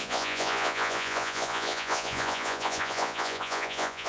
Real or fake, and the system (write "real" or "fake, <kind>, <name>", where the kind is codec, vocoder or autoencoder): fake, vocoder, Vocos